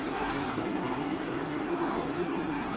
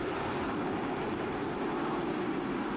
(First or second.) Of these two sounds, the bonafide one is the second